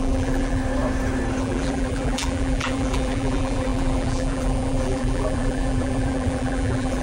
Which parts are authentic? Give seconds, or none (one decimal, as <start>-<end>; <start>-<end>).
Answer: 0.6-1.4